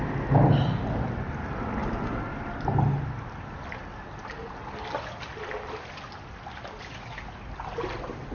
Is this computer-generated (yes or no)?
no